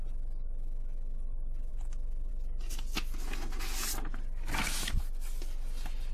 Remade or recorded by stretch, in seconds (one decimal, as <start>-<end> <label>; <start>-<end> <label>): 0.0-6.1 recorded